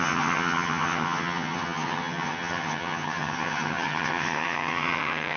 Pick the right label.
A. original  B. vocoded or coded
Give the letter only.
B